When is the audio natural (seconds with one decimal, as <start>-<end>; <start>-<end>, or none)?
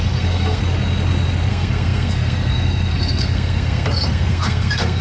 0.6-1.5